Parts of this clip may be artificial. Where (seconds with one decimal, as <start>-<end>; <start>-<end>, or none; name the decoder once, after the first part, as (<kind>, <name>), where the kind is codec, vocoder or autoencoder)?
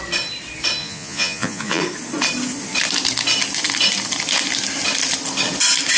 0.8-1.8 (vocoder, Vocos)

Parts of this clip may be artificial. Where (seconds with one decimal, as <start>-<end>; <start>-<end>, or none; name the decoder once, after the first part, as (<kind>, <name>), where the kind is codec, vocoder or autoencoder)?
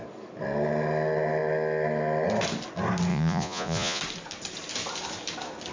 3.1-4.0 (vocoder, Vocos)